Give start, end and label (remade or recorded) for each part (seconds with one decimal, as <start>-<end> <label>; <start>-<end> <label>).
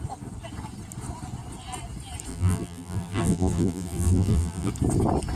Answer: 0.0-2.3 recorded; 2.3-4.7 remade; 4.7-5.4 recorded